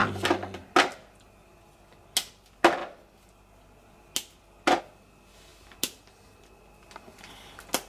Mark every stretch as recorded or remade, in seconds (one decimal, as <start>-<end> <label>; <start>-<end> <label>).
0.0-7.9 recorded